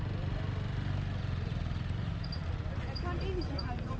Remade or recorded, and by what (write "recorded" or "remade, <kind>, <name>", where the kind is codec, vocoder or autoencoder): recorded